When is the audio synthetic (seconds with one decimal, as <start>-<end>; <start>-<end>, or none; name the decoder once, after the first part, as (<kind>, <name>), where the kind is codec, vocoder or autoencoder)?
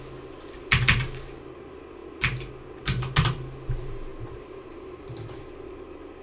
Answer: none